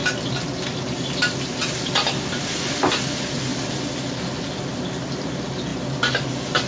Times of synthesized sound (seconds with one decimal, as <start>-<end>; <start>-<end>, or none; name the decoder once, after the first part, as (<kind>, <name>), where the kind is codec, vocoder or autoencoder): none